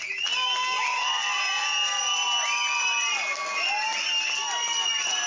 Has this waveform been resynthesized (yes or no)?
no